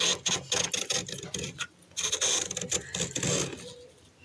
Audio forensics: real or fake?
real